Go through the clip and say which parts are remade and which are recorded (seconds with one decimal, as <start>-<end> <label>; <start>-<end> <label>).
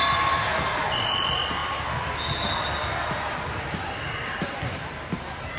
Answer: 0.0-5.6 recorded